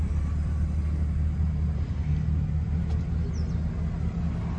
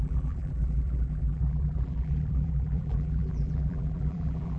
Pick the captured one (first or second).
first